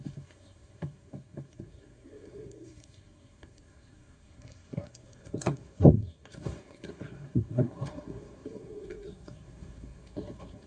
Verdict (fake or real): fake